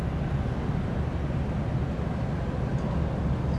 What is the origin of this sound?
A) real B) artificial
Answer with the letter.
A